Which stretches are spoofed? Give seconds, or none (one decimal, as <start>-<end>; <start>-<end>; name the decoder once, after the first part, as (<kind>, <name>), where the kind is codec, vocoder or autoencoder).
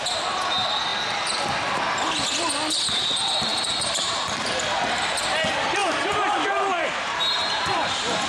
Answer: 3.5-4.3 (vocoder, BigVGAN v2); 5.8-8.3